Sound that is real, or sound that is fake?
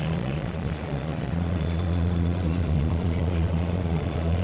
fake